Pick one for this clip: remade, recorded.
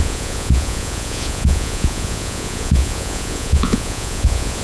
remade